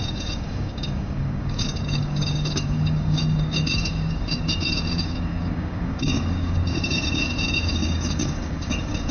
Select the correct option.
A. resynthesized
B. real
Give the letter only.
A